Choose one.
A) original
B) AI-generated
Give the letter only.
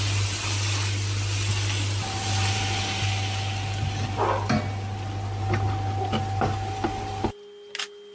A